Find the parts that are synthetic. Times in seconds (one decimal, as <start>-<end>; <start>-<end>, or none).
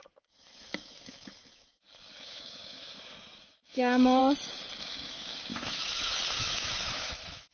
0.0-4.2; 4.8-7.5